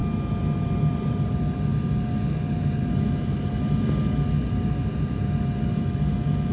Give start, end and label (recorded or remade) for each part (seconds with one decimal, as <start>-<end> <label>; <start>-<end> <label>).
0.0-6.5 recorded